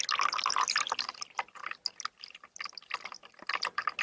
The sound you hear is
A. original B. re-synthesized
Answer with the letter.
A